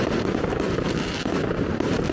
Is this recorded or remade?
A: recorded